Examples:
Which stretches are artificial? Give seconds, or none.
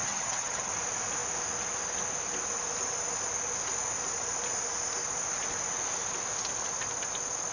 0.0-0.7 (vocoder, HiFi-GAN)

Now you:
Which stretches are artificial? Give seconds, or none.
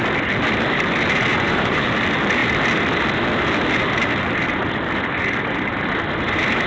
1.3-1.9 (vocoder, Vocos)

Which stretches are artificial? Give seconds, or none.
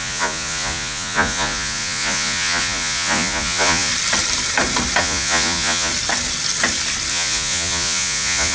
0.0-3.9 (vocoder, Vocos); 5.0-5.9; 7.1-8.5